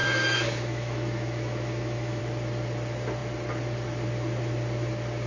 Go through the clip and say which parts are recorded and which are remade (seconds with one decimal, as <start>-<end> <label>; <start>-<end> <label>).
0.0-2.2 remade; 2.2-5.3 recorded